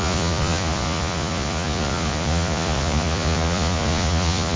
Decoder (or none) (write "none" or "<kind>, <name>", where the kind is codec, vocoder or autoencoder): vocoder, Vocos